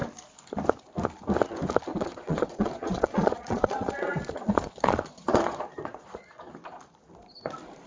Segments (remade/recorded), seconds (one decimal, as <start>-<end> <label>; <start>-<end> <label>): 0.0-1.9 recorded; 1.9-6.5 remade; 6.5-7.9 recorded